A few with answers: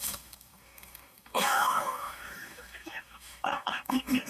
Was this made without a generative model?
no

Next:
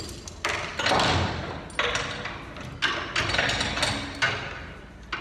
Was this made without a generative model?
yes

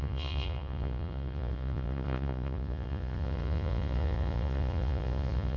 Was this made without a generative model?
no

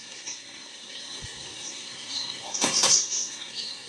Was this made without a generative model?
no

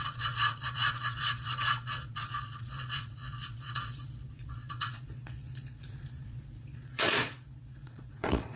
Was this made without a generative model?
no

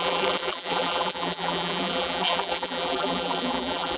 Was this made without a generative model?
no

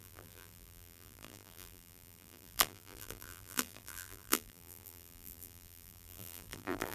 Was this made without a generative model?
no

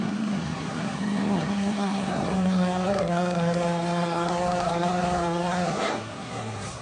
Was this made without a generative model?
no